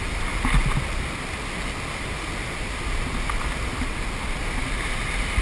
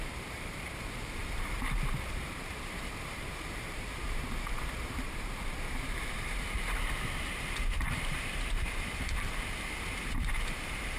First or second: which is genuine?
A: first